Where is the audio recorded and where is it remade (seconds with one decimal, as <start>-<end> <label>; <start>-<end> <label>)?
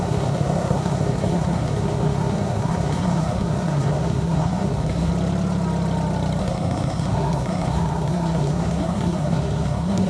0.0-5.1 remade; 5.1-6.4 recorded; 6.4-10.1 remade